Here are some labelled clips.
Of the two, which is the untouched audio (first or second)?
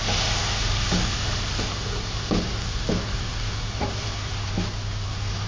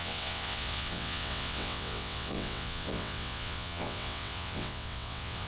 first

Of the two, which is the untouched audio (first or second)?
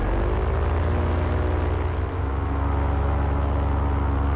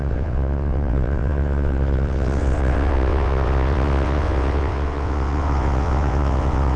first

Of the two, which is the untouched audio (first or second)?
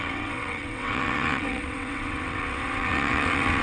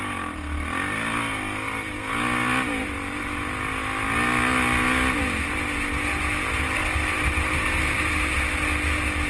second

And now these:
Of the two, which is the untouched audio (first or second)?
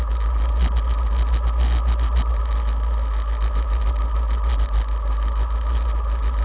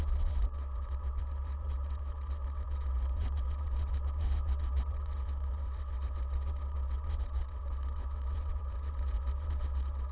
first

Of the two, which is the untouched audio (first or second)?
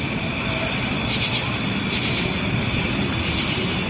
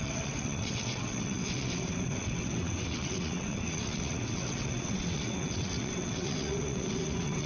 first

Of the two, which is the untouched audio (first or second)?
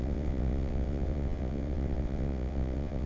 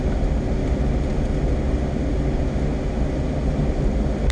second